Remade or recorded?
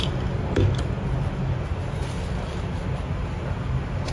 recorded